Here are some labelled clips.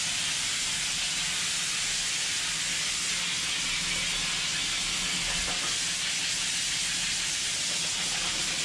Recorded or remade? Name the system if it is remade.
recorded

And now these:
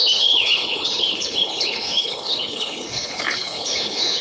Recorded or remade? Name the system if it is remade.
remade, codec, HILCodec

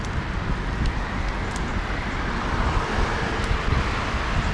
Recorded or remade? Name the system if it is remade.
recorded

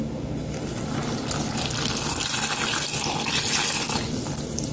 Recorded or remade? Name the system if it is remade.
recorded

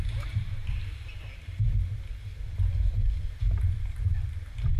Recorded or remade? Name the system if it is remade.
recorded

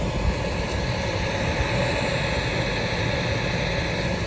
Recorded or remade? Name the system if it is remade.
recorded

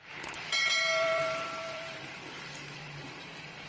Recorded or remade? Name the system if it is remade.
remade, vocoder, BigVGAN v2